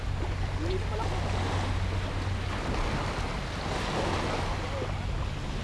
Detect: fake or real real